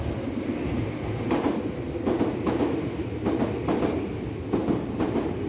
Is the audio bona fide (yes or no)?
yes